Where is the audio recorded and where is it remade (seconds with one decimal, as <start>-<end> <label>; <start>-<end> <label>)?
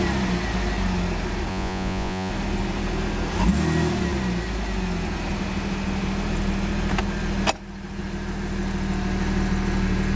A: 0.0-1.5 recorded; 1.5-2.3 remade; 2.3-10.2 recorded